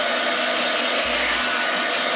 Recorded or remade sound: recorded